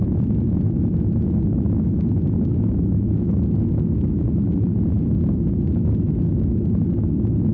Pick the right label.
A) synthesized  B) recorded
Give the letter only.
A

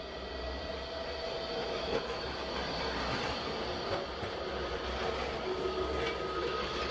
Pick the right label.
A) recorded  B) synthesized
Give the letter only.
A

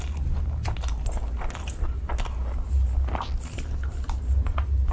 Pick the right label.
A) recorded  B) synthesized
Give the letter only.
A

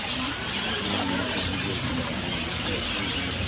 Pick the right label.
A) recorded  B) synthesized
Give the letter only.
B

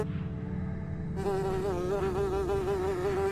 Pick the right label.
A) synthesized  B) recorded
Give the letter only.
B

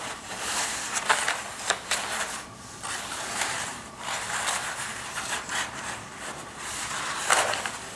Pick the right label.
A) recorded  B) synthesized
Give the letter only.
B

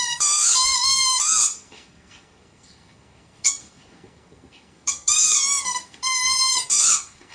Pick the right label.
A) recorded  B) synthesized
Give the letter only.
B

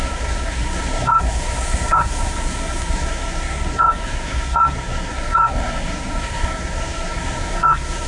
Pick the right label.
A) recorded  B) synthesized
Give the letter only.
B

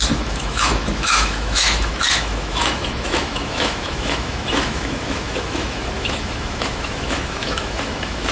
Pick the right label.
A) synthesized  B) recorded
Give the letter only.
A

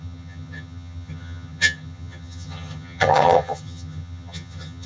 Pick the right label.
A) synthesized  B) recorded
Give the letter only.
A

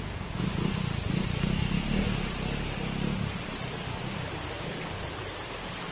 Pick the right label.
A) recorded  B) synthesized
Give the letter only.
A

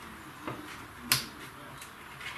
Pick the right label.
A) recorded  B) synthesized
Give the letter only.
A